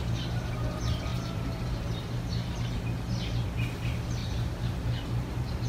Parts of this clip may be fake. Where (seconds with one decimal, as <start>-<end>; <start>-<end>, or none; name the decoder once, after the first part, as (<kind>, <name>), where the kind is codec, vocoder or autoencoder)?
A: 1.1-2.3 (vocoder, BigVGAN v2); 4.2-5.7